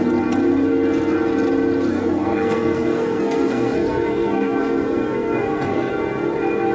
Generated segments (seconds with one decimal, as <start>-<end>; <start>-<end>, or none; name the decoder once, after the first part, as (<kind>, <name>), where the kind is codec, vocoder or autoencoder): 1.9-5.9 (codec, SNAC)